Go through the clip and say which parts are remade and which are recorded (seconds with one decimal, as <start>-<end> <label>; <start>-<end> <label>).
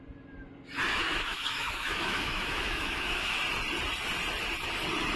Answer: 0.0-0.9 recorded; 0.9-3.4 remade; 3.4-5.2 recorded